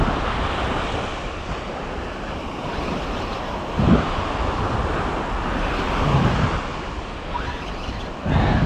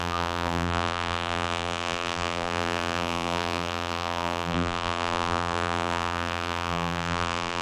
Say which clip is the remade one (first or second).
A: second